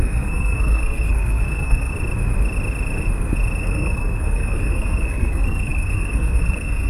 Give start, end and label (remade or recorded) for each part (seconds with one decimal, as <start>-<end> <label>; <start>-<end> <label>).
0.0-1.9 remade; 1.9-3.6 recorded; 3.6-6.9 remade